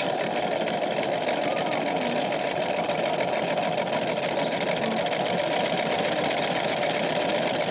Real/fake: real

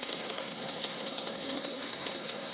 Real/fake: fake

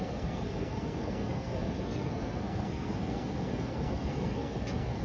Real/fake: fake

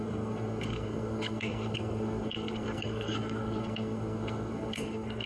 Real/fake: fake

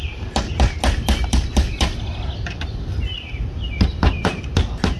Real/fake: real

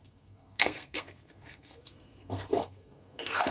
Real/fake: fake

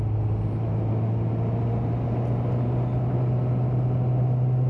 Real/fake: real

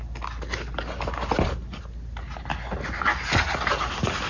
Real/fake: real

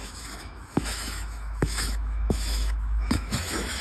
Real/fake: fake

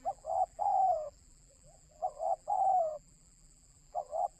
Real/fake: fake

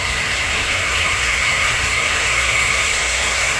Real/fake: fake